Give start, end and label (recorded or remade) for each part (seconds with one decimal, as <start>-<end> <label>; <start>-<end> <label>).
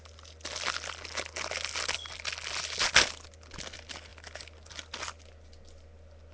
0.0-6.3 recorded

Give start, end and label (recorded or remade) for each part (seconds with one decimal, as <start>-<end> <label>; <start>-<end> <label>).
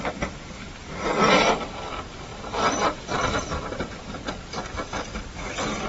0.0-2.3 recorded; 2.3-4.4 remade; 4.4-5.9 recorded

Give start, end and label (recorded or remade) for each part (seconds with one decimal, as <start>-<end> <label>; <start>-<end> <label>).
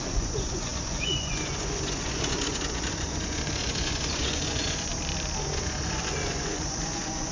0.0-4.9 remade; 4.9-5.4 recorded; 5.4-7.3 remade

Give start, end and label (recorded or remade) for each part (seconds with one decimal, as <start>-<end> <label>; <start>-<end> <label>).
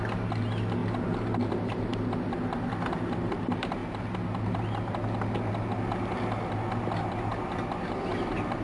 0.0-0.8 remade; 0.8-1.5 recorded; 1.5-3.8 remade; 3.8-5.7 recorded; 5.7-8.6 remade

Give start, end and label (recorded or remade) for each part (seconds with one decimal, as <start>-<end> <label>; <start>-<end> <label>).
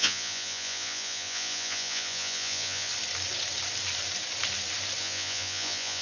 0.0-2.9 remade; 2.9-5.0 recorded; 5.0-6.0 remade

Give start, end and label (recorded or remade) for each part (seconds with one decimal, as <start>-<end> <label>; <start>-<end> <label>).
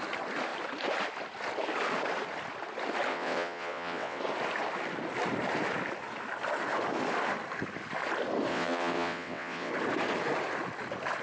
0.0-3.1 recorded; 3.1-4.2 remade; 4.2-8.5 recorded; 8.5-9.7 remade; 9.7-11.2 recorded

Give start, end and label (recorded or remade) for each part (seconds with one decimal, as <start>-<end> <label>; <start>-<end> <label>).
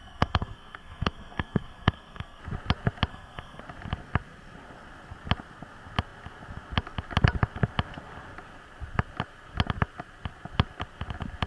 0.0-2.4 remade; 2.4-3.1 recorded; 3.1-3.6 remade; 3.6-11.5 recorded